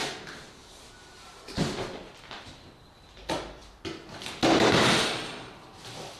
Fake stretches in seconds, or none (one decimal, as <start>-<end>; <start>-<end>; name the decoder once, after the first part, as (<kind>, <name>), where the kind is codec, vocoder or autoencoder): 0.6-2.1 (vocoder, BigVGAN v2)